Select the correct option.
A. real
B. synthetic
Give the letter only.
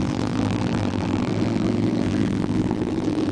B